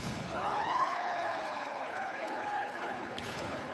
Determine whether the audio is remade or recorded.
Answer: remade